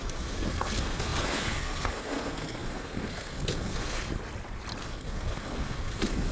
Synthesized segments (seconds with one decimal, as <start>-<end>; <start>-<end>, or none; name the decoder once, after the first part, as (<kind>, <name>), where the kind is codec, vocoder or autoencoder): 0.0-4.1 (codec, SNAC); 4.8-6.3